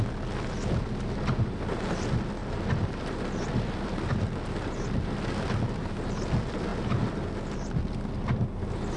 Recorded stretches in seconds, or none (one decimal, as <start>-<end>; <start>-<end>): 0.0-9.0